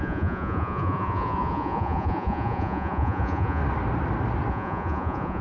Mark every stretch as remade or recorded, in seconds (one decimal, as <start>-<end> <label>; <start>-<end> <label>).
0.0-3.6 remade; 3.6-4.5 recorded; 4.5-5.4 remade